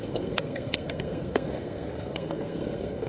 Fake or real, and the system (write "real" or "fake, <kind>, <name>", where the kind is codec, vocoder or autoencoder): fake, codec, SNAC